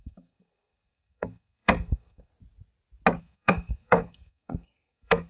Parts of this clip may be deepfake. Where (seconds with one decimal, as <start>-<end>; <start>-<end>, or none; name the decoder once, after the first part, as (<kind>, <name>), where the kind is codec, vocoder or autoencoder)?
0.0-2.3 (codec, SNAC); 3.2-5.3